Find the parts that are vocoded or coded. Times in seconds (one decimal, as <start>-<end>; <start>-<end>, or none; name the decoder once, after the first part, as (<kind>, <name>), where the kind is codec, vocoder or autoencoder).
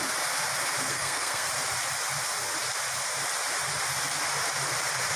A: 0.9-1.5 (codec, SNAC)